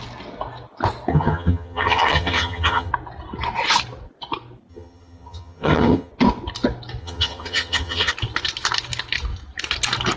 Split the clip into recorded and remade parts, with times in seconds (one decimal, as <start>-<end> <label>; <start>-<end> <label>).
0.0-1.1 recorded; 1.1-2.9 remade; 2.9-4.7 recorded; 4.7-6.1 remade; 6.1-7.0 recorded; 7.0-8.1 remade; 8.1-10.2 recorded